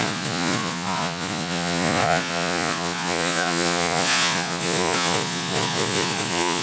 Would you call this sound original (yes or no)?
no